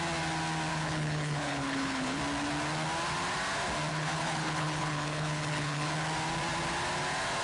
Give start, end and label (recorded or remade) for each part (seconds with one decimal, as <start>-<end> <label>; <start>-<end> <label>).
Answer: 0.0-0.7 recorded; 0.7-2.2 remade; 2.2-3.9 recorded; 3.9-5.9 remade; 5.9-7.4 recorded